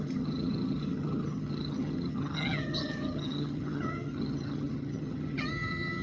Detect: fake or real fake